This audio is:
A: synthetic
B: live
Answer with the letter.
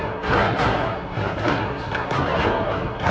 A